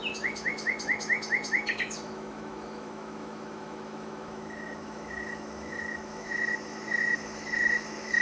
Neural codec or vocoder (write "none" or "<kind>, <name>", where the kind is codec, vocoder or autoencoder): autoencoder, DAC-VAE